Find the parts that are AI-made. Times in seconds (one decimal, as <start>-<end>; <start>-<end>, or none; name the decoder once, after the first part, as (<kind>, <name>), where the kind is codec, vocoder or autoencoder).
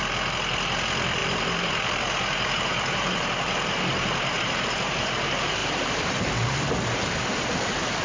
1.2-5.1 (vocoder, BigVGAN v2); 5.6-6.2